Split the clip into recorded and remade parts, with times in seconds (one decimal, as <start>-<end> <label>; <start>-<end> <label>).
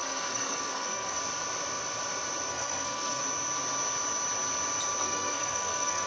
0.0-1.2 remade; 1.2-2.5 recorded; 2.5-3.2 remade; 3.2-5.0 recorded; 5.0-6.1 remade